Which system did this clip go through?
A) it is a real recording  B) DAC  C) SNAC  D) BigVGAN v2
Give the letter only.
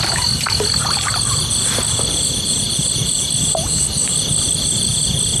A